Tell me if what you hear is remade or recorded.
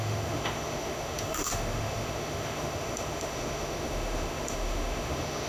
remade